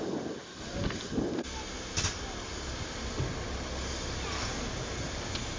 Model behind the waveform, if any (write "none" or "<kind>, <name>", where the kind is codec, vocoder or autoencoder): none